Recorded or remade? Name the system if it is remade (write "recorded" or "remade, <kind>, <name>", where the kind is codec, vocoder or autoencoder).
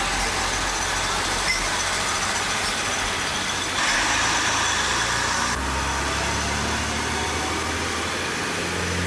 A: recorded